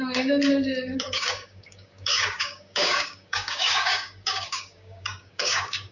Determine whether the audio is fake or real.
fake